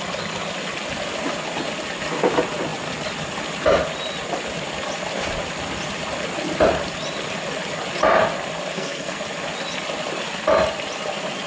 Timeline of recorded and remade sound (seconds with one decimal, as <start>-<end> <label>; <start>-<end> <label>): 0.0-8.7 recorded; 8.7-9.2 remade; 9.2-11.5 recorded